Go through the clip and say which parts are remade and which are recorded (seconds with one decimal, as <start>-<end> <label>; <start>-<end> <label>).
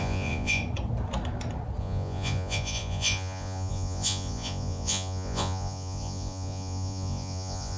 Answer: 0.0-0.6 remade; 0.6-1.8 recorded; 1.8-7.8 remade